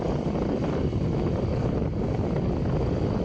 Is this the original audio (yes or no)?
yes